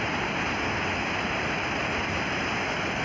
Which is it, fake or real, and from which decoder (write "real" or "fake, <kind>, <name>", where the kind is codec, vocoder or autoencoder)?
real